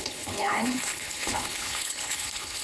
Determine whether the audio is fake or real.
fake